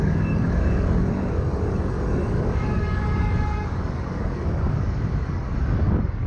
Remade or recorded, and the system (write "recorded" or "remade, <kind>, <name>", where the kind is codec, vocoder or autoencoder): remade, codec, DAC